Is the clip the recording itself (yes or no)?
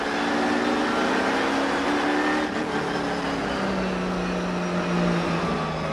yes